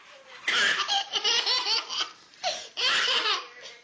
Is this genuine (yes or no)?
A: no